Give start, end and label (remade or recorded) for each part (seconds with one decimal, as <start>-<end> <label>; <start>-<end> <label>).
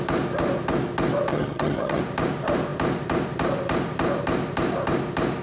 0.0-1.3 recorded; 1.3-2.0 remade; 2.0-5.4 recorded